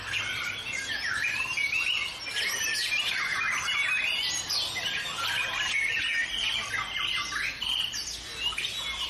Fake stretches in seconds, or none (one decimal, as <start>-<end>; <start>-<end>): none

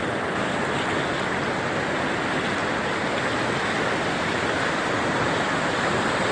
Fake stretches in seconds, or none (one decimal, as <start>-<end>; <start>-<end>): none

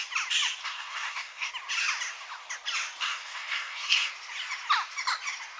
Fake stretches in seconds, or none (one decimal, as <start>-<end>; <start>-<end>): 0.6-1.5; 3.0-4.1